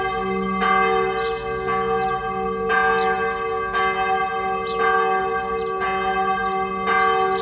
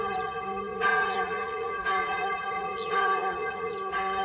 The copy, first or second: second